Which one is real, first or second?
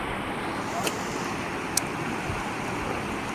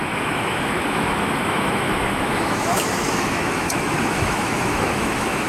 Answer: first